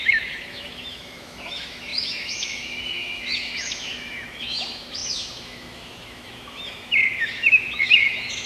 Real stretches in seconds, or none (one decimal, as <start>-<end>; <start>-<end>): none